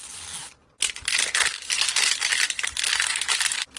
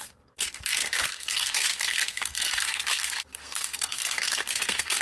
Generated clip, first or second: second